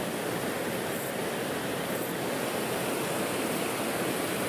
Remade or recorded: recorded